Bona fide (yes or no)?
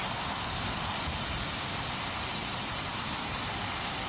no